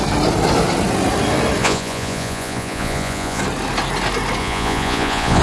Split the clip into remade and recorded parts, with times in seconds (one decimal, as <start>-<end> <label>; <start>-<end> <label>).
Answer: 0.0-1.6 recorded; 1.6-3.4 remade; 3.4-4.4 recorded; 4.4-5.4 remade